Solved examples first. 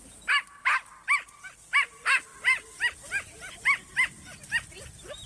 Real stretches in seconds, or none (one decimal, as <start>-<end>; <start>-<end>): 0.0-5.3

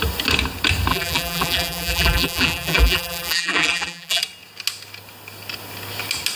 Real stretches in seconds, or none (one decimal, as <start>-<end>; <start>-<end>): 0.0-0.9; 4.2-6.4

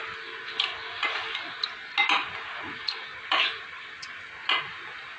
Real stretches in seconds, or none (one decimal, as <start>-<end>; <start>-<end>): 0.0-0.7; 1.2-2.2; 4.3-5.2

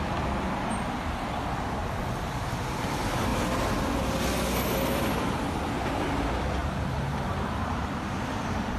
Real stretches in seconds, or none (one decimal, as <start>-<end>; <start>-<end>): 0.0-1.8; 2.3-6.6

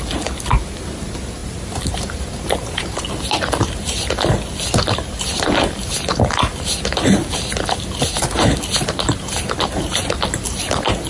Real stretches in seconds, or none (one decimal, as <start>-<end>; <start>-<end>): 0.0-1.4; 3.0-11.1

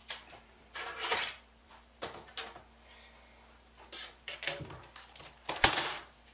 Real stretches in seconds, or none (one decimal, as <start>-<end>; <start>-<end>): 2.4-4.0; 4.5-5.5

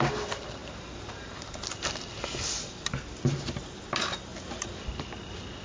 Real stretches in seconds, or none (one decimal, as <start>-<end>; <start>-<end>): 0.0-5.6